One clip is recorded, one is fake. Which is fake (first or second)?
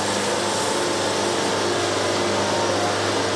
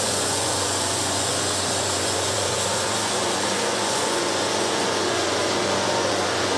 second